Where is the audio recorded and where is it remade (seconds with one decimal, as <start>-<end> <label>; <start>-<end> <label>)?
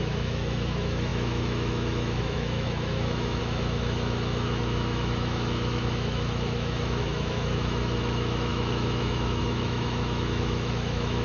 0.0-11.2 remade